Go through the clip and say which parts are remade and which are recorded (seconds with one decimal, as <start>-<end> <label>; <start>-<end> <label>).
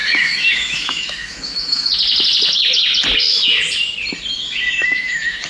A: 0.0-1.9 remade; 1.9-4.3 recorded; 4.3-5.5 remade